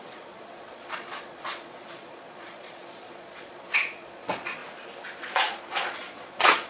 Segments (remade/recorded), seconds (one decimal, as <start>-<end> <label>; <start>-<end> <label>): 0.0-4.6 remade; 4.6-5.2 recorded; 5.2-6.7 remade